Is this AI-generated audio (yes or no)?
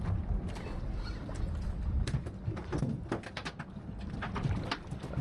no